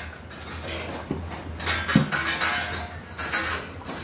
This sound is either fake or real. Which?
real